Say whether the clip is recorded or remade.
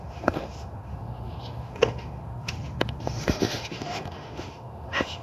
remade